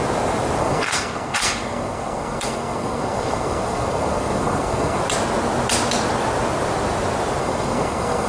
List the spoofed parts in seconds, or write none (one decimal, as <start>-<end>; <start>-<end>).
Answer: 0.6-5.0; 7.4-8.3